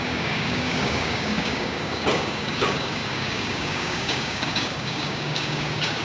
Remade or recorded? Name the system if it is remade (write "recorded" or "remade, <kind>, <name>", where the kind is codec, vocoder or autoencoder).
remade, codec, DAC